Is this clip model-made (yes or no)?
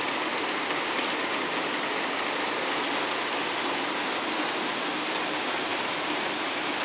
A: no